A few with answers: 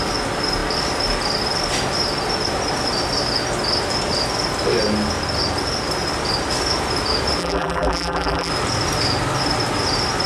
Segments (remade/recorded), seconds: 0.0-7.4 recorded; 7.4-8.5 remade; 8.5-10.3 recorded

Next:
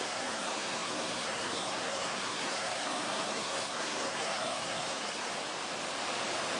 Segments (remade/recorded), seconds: 0.0-5.3 remade; 5.3-6.6 recorded

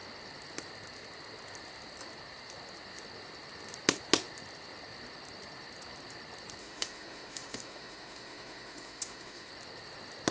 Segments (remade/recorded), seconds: 0.0-6.6 recorded; 6.6-9.5 remade; 9.5-10.3 recorded